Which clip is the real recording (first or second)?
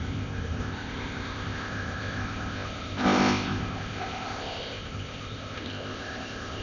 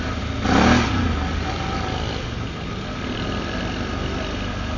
second